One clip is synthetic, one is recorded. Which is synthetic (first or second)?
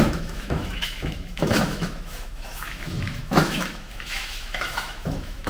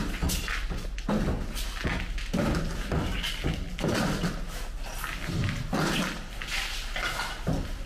first